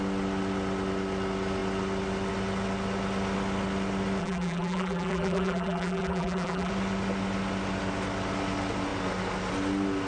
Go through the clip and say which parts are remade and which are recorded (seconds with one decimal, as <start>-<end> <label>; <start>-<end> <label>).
0.0-4.2 recorded; 4.2-6.7 remade; 6.7-10.1 recorded